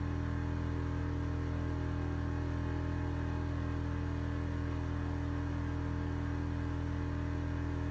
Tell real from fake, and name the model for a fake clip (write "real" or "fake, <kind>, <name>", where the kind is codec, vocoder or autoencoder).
real